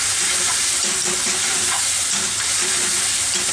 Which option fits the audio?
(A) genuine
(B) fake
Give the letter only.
A